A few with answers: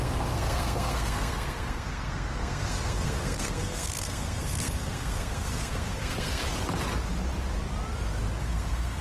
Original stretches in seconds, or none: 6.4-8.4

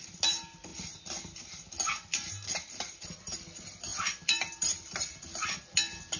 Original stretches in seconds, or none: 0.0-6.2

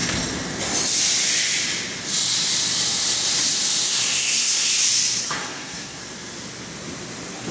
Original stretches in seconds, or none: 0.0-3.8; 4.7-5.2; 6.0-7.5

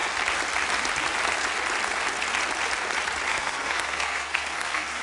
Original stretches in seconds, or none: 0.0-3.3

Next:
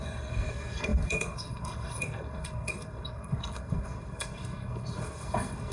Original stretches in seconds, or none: none